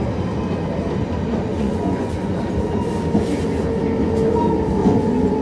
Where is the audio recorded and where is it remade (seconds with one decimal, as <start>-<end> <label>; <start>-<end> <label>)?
0.0-1.5 recorded; 1.5-2.4 remade; 2.4-4.8 recorded; 4.8-5.4 remade